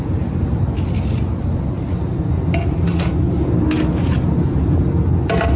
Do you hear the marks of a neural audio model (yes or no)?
no